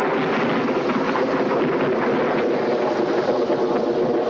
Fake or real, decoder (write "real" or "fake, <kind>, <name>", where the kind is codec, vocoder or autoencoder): real